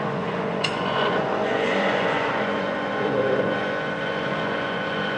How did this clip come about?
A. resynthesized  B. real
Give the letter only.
A